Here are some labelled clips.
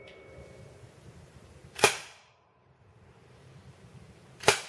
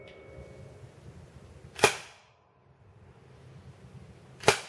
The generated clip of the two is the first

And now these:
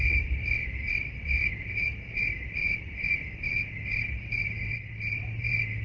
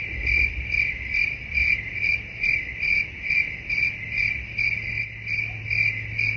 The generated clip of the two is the first